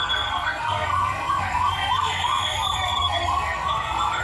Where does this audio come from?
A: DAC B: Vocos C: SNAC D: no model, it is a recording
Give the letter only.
C